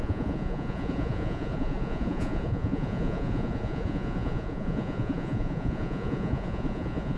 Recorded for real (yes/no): no